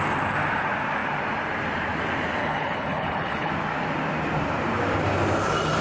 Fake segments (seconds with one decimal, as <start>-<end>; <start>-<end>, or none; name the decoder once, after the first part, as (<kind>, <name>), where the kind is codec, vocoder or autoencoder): 2.4-3.5 (codec, HILCodec)